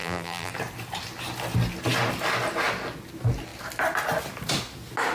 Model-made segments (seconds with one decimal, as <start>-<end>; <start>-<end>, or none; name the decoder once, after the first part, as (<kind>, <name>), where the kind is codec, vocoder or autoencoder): 0.0-0.5 (vocoder, BigVGAN v2)